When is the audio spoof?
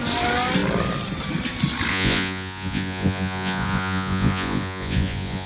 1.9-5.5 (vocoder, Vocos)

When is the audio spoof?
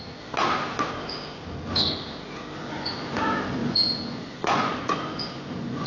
2.6-3.2 (vocoder, Vocos); 3.6-5.9